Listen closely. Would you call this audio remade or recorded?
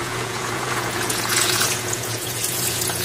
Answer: remade